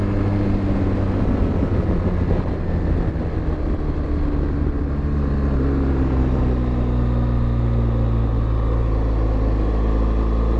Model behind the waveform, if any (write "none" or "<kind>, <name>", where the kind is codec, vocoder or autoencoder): none